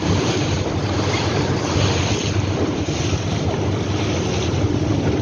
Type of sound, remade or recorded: recorded